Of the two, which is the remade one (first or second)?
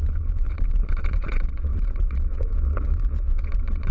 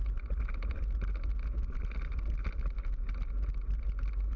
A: first